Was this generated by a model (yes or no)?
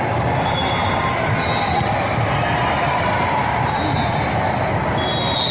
no